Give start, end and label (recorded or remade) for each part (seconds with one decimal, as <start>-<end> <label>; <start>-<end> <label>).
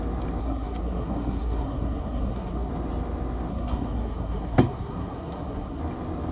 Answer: 0.0-0.4 recorded; 0.4-2.7 remade; 2.7-3.5 recorded; 3.5-5.8 remade; 5.8-6.3 recorded